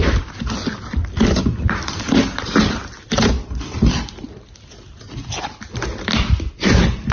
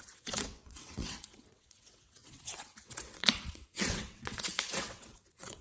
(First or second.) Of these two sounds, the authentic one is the first